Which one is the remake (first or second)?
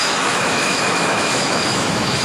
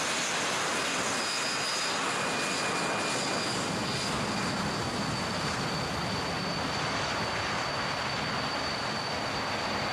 first